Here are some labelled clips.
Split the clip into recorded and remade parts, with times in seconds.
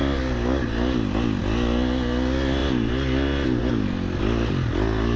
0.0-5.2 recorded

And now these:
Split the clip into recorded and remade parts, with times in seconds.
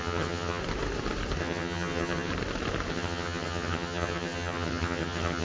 0.0-0.6 remade; 0.6-1.4 recorded; 1.4-2.3 remade; 2.3-2.9 recorded; 2.9-5.4 remade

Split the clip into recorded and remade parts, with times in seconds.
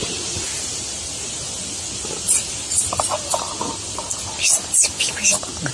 0.0-5.7 recorded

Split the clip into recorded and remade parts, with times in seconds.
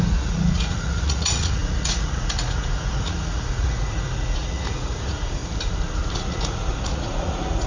0.0-5.4 remade; 5.4-6.1 recorded; 6.1-7.7 remade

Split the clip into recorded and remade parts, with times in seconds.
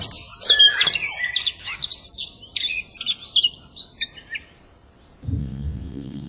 0.0-5.4 recorded; 5.4-6.3 remade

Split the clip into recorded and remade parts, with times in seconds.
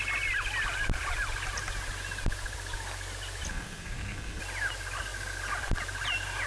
0.0-3.5 recorded; 3.5-4.4 remade; 4.4-6.5 recorded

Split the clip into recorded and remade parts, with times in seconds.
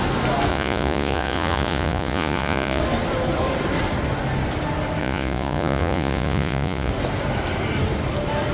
0.0-0.5 recorded; 0.5-2.8 remade; 2.8-5.0 recorded; 5.0-6.9 remade; 6.9-8.5 recorded